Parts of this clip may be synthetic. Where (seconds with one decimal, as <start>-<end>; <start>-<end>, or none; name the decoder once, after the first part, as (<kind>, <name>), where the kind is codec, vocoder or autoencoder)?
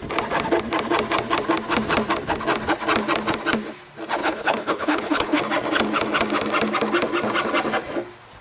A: 4.2-5.4 (codec, HILCodec)